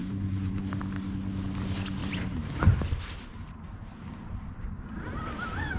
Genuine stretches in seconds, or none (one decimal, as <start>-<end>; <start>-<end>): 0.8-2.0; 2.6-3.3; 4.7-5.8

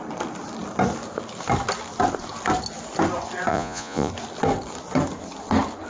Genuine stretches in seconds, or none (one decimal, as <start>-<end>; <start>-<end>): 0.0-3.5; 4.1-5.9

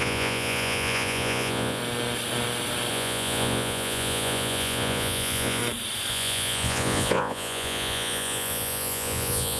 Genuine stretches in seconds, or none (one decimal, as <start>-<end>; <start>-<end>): 1.8-2.9; 5.6-6.1

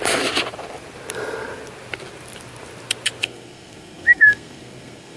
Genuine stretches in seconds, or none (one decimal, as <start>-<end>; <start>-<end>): 0.0-3.2

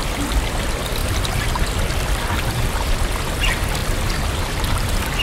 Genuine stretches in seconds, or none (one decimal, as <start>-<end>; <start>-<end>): 0.0-5.2